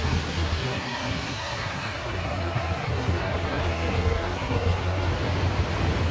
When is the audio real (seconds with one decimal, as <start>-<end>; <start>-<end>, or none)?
5.1-6.1